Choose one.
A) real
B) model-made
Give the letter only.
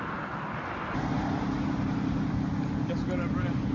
A